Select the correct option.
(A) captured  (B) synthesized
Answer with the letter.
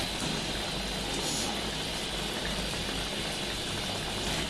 A